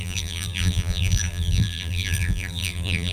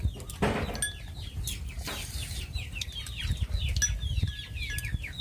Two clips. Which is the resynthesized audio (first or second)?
first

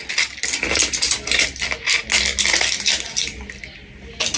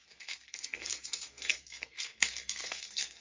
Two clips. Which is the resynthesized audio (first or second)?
second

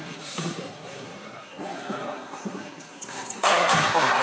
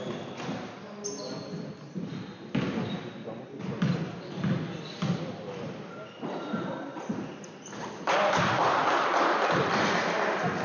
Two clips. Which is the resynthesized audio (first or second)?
first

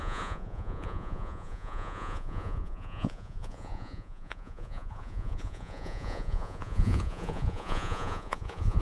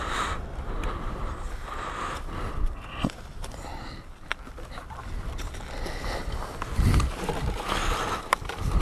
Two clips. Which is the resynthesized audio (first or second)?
first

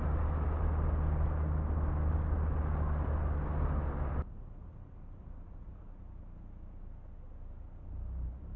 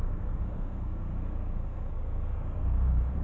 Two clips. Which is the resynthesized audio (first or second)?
second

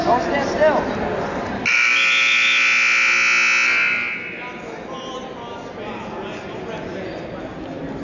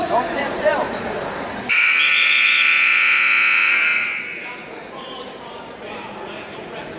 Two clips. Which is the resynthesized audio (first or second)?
second